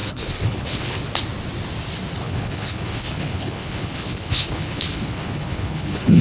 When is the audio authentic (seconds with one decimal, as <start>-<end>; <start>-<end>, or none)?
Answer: 1.0-2.2